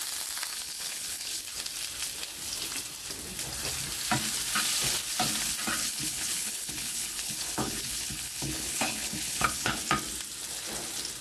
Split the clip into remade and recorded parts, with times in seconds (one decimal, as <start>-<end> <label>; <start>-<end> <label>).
0.0-0.5 recorded; 0.5-1.4 remade; 1.4-5.8 recorded; 5.8-9.8 remade; 9.8-11.2 recorded